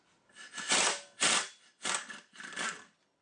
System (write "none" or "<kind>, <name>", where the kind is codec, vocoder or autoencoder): none